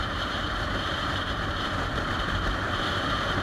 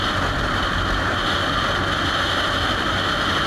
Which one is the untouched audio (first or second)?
second